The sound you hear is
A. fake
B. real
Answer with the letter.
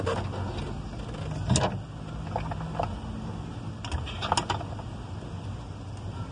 B